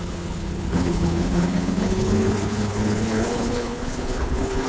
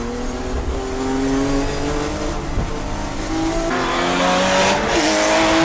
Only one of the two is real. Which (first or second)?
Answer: second